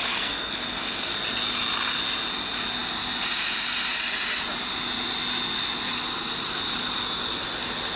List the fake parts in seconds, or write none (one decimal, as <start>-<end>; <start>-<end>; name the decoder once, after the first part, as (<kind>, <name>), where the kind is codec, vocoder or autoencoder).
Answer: 0.0-1.1 (codec, SNAC)